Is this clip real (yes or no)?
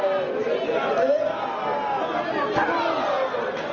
yes